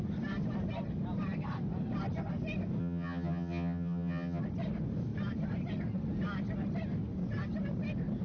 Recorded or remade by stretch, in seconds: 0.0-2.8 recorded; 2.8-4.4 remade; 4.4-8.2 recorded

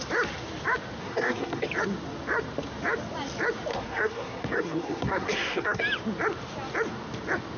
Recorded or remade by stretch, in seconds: 0.0-1.0 recorded; 1.0-1.6 remade; 1.6-3.7 recorded; 3.7-5.8 remade; 5.8-7.6 recorded

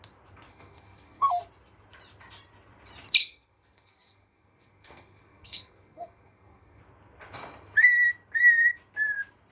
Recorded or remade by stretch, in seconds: 0.0-0.5 recorded; 0.5-1.4 remade; 1.4-3.2 recorded; 3.2-6.8 remade; 6.8-9.5 recorded

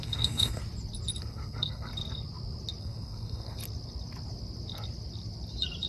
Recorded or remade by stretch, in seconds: 0.0-0.6 remade; 0.6-1.2 recorded; 1.2-1.9 remade; 1.9-2.8 recorded; 2.8-3.6 remade; 3.6-5.9 recorded